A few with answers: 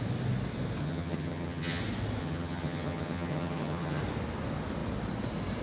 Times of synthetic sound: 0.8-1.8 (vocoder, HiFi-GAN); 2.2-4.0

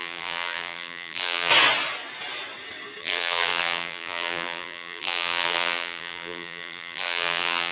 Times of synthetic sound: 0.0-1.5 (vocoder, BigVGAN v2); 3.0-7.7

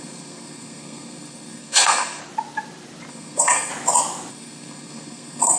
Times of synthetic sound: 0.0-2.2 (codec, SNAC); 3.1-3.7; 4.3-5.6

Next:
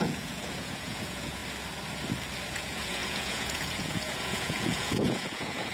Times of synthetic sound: 0.0-1.4 (vocoder, Vocos); 2.5-5.7

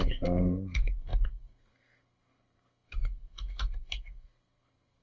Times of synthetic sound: 0.0-5.0 (codec, SNAC)